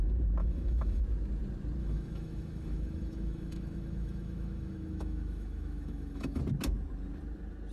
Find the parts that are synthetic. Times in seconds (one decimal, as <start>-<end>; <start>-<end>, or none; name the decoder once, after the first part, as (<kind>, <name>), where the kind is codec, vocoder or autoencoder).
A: 0.4-1.0 (autoencoder, DAC-VAE); 1.8-6.4